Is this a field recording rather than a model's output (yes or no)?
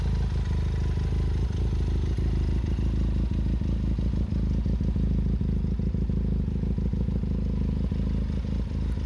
yes